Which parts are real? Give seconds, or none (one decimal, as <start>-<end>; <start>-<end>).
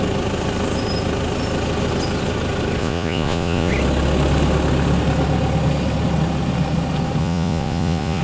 0.0-2.8; 3.7-7.2